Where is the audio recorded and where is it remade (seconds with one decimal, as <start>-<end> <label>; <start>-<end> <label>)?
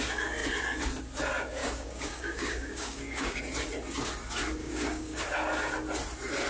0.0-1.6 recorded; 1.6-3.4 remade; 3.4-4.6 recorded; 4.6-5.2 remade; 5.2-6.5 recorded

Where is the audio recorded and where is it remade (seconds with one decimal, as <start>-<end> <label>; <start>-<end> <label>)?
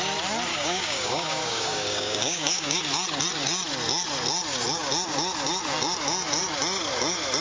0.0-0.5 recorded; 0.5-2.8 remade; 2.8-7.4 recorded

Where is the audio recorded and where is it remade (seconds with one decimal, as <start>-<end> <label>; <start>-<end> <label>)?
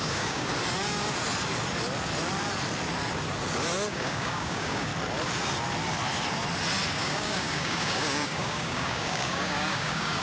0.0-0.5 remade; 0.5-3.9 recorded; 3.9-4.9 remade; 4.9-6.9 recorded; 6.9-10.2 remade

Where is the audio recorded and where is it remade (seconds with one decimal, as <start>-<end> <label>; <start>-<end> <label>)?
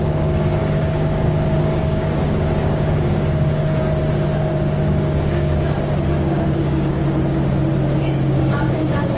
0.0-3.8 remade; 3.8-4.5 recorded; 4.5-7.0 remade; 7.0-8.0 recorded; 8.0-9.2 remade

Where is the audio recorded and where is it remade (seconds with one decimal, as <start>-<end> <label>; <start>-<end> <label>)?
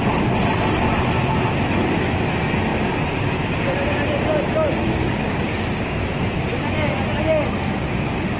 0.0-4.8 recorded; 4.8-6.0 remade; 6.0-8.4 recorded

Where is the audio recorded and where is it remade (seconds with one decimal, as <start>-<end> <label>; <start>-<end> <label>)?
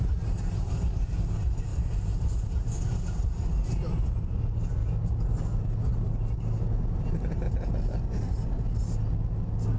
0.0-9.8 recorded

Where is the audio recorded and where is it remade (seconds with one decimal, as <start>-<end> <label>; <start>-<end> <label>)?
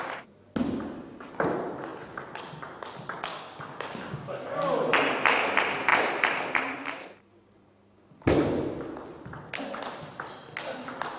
0.0-3.3 recorded; 3.3-4.7 remade; 4.7-11.2 recorded